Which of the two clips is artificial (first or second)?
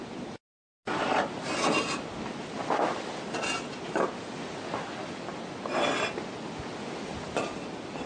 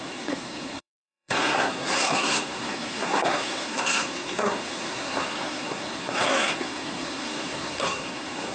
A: second